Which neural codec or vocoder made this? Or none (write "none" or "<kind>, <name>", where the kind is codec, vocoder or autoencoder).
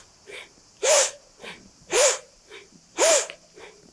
vocoder, BigVGAN v2